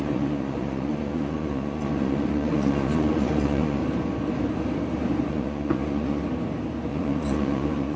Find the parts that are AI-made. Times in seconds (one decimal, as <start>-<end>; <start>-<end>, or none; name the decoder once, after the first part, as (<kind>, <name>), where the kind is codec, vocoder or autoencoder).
0.0-3.8 (vocoder, Vocos); 5.3-6.2; 6.9-8.0